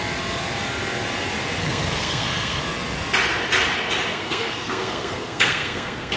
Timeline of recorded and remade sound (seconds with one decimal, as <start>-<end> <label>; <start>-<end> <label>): 0.0-1.6 recorded; 1.6-2.6 remade; 2.6-4.1 recorded; 4.1-6.2 remade